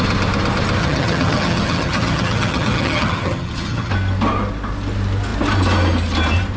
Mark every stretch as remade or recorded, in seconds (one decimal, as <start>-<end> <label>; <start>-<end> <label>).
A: 0.0-0.8 recorded; 0.8-3.9 remade; 3.9-6.6 recorded